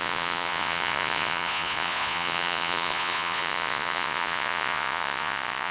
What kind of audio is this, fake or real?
fake